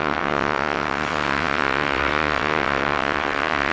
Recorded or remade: remade